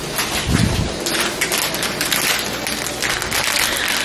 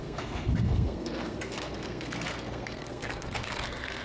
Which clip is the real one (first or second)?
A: first